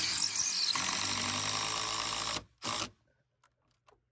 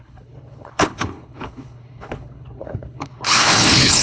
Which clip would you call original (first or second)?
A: first